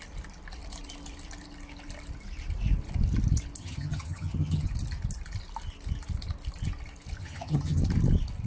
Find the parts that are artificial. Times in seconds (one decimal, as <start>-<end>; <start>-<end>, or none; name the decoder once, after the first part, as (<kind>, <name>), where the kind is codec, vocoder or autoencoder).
3.6-4.7 (vocoder, HiFi-GAN); 7.2-7.8